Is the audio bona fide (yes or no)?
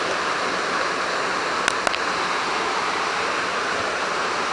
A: yes